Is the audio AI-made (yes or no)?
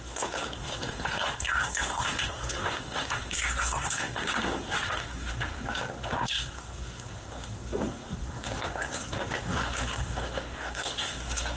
yes